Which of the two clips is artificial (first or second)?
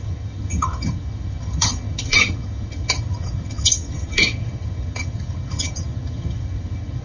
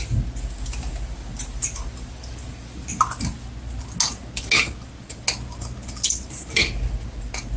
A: first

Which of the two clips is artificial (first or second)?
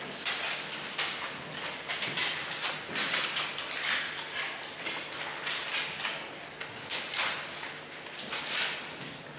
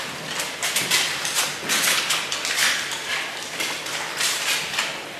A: second